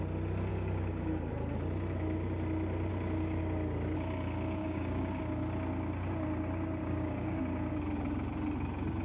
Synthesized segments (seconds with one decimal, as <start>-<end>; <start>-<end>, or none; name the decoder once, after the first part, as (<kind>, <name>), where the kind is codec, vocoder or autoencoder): 0.5-1.3 (codec, DAC); 2.9-3.4; 4.6-5.2; 6.8-7.4